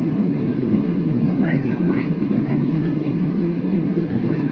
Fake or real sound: fake